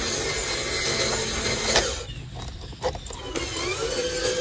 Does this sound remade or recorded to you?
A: recorded